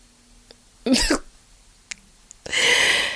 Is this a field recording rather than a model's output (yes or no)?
yes